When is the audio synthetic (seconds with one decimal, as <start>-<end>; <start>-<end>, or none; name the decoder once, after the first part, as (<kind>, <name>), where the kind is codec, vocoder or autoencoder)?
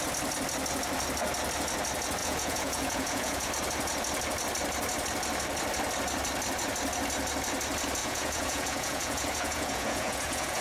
2.2-3.5 (vocoder, Vocos); 8.0-10.6